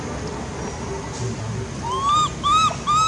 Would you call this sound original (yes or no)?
yes